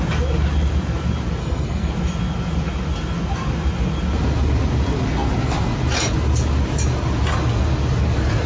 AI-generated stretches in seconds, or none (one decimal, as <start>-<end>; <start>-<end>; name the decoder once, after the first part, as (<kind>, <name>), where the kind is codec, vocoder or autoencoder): 1.4-1.9 (codec, SNAC)